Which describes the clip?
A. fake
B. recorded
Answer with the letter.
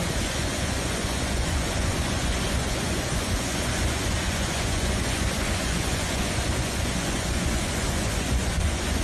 A